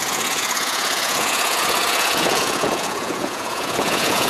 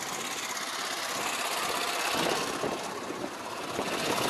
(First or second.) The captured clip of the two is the second